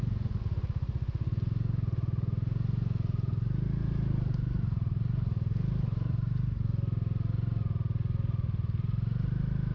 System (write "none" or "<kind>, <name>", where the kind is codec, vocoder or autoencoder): none